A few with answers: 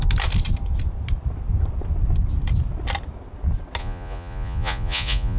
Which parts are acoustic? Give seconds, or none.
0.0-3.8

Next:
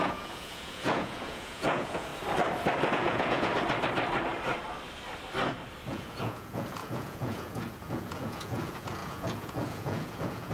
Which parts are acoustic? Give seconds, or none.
2.1-2.9; 3.5-5.9